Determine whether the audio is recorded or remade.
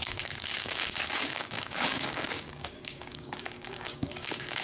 remade